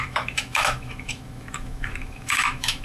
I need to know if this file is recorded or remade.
remade